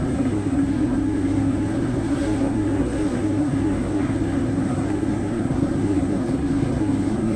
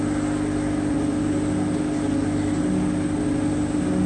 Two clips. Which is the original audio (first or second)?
second